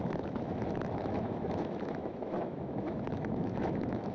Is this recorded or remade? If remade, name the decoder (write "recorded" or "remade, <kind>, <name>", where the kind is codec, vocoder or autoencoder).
remade, autoencoder, DAC-VAE